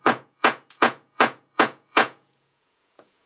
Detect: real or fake fake